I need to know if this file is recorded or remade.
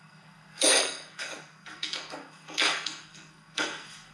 remade